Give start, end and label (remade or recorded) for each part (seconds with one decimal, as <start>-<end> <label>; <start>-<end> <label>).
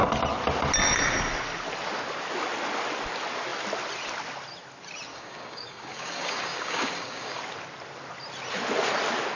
0.0-5.1 recorded; 5.1-7.4 remade; 7.4-9.4 recorded